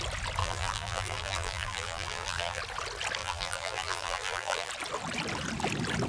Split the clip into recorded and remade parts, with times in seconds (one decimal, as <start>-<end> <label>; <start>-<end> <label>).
0.0-0.4 recorded; 0.4-2.6 remade; 2.6-3.2 recorded; 3.2-4.7 remade; 4.7-6.1 recorded